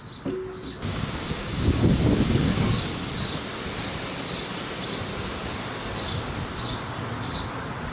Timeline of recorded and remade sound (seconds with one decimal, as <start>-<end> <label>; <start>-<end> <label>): 0.0-0.9 recorded; 0.9-2.7 remade; 2.7-7.9 recorded